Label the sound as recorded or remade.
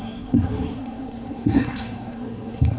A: remade